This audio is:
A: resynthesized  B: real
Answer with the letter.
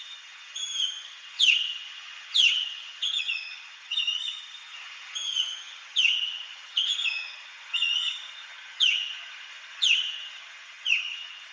A